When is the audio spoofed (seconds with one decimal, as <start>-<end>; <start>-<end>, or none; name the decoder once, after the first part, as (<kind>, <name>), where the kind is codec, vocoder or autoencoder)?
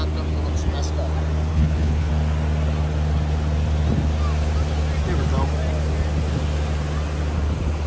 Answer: 1.5-2.1 (codec, HILCodec)